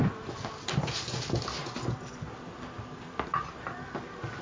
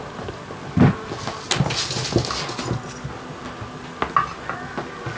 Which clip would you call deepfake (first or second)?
first